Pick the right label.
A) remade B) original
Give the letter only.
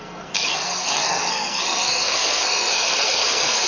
A